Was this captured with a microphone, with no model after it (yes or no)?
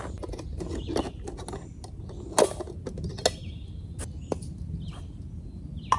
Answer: yes